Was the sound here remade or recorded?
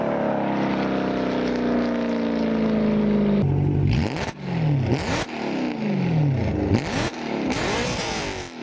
recorded